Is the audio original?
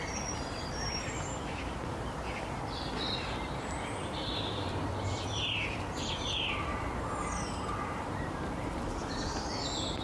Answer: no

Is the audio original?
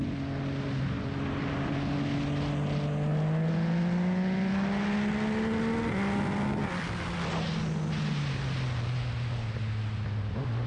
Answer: yes